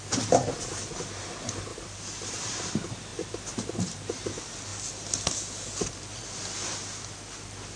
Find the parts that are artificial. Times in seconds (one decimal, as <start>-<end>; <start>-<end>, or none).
1.7-2.7; 3.1-4.2